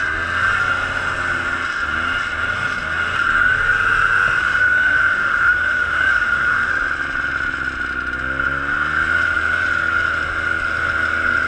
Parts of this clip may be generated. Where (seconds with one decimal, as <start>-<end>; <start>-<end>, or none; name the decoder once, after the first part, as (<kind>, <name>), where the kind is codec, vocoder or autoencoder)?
4.4-6.7 (autoencoder, DAC-VAE)